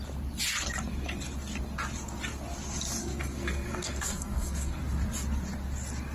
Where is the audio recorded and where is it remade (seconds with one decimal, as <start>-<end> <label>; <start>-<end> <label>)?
0.0-3.0 recorded; 3.0-4.8 remade; 4.8-6.1 recorded